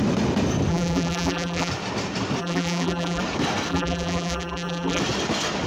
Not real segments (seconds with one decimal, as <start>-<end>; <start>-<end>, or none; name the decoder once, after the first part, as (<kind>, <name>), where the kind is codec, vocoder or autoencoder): 0.7-1.7 (vocoder, BigVGAN v2); 2.4-3.2; 3.7-5.0